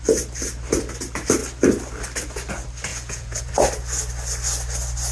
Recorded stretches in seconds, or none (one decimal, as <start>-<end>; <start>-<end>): 0.0-2.9; 3.5-5.1